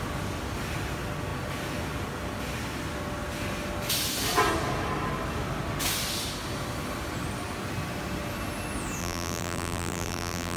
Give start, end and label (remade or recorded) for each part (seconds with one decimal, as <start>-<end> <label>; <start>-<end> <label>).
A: 0.0-9.0 recorded; 9.0-10.6 remade